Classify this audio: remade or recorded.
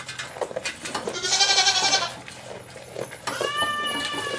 recorded